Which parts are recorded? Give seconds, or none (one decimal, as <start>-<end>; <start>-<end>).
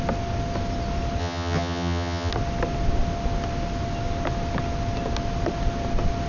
0.0-1.2; 2.3-6.3